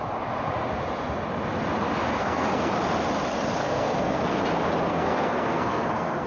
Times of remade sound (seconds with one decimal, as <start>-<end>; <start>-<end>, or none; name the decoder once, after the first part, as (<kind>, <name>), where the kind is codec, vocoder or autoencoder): 2.2-2.7 (codec, SNAC); 3.6-4.4; 4.9-6.3